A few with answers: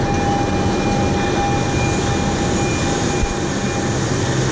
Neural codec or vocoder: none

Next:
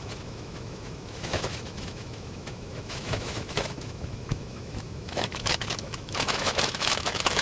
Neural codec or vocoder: autoencoder, DAC-VAE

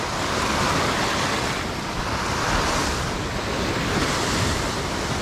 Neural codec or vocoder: none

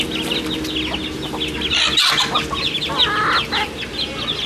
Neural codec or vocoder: none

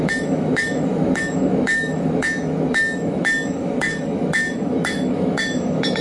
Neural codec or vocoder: autoencoder, DAC-VAE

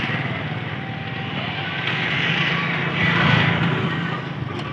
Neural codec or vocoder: none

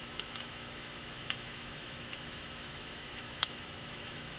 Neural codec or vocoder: autoencoder, DAC-VAE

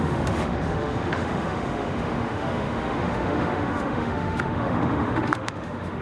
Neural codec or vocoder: autoencoder, DAC-VAE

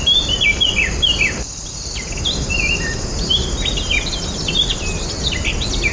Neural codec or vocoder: none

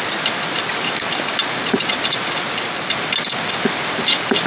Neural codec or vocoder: none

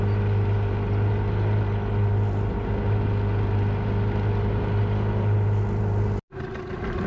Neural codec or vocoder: none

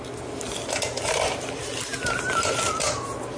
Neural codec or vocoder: none